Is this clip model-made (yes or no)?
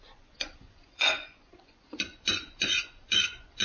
yes